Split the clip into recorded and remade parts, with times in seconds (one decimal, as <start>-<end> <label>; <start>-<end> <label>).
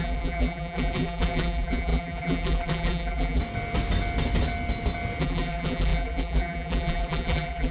0.0-3.4 remade; 3.4-5.2 recorded; 5.2-7.7 remade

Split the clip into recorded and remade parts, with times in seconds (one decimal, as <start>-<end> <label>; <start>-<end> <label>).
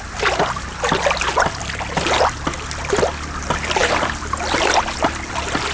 0.0-5.7 recorded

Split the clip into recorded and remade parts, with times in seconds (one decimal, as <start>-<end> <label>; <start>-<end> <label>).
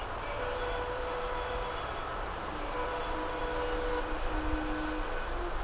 0.0-3.4 remade; 3.4-5.6 recorded